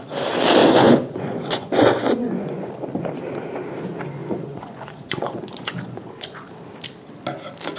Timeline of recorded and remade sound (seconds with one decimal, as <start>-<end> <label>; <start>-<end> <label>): 0.0-0.6 recorded; 0.6-2.7 remade; 2.7-4.2 recorded; 4.2-6.5 remade; 6.5-7.8 recorded